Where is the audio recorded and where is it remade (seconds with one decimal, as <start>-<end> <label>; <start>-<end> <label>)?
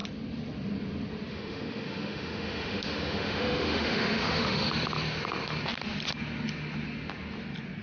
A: 0.0-1.3 recorded; 1.3-4.7 remade; 4.7-7.8 recorded